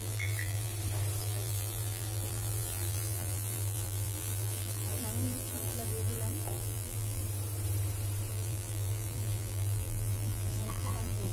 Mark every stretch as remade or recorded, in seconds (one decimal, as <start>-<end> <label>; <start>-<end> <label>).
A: 0.0-0.7 remade; 0.7-1.2 recorded; 1.2-7.2 remade; 7.2-8.3 recorded; 8.3-11.3 remade

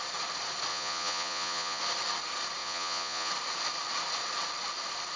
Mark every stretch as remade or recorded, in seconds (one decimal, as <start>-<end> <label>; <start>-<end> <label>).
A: 0.0-0.7 recorded; 0.7-1.8 remade; 1.8-2.6 recorded; 2.6-3.3 remade; 3.3-5.2 recorded

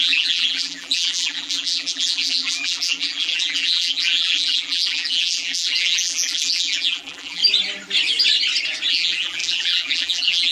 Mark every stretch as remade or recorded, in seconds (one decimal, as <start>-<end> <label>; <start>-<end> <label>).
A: 0.0-7.4 remade; 7.4-8.9 recorded; 8.9-10.5 remade

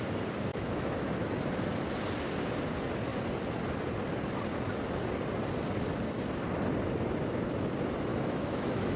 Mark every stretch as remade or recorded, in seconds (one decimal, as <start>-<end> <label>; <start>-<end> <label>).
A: 0.0-0.5 recorded; 0.5-1.3 remade; 1.3-8.1 recorded; 8.1-9.0 remade

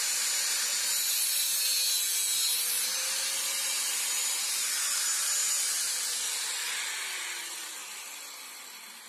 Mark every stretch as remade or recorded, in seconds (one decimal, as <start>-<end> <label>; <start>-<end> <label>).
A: 0.0-9.1 recorded

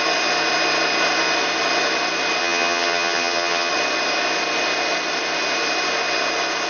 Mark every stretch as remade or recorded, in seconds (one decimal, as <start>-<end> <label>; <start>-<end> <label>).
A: 0.0-2.4 recorded; 2.4-3.7 remade; 3.7-6.7 recorded